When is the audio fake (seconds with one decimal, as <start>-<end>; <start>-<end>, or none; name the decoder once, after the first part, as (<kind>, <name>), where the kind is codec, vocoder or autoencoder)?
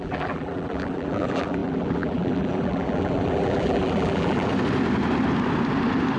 0.0-4.5 (vocoder, BigVGAN v2)